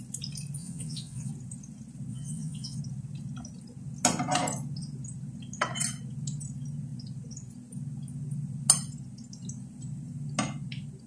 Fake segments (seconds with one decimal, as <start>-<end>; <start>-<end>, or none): 0.6-1.3; 2.1-2.8